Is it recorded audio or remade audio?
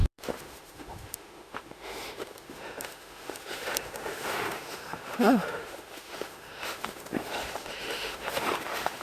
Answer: remade